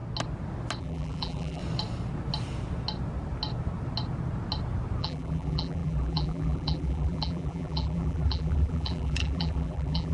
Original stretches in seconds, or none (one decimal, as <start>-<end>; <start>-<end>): 0.0-0.8; 1.6-5.0